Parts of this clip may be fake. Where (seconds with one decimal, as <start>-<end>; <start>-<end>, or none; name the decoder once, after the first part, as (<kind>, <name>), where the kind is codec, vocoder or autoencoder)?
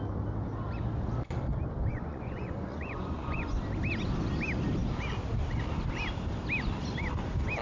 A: 1.9-3.6 (vocoder, Vocos)